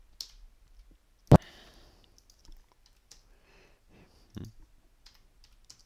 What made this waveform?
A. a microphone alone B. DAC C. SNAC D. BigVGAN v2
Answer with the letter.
A